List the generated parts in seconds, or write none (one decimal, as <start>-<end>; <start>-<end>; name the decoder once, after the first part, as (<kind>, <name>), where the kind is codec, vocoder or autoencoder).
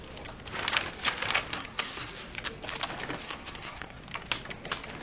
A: 1.5-2.1 (codec, SNAC); 3.2-4.0